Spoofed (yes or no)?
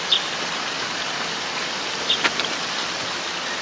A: no